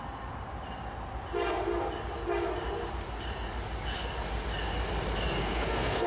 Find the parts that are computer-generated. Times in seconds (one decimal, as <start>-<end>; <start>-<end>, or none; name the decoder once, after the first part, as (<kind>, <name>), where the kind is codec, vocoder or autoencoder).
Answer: 5.4-6.1 (codec, SNAC)